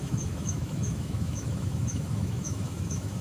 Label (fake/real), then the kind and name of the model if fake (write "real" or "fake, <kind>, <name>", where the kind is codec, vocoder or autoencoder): fake, autoencoder, DAC-VAE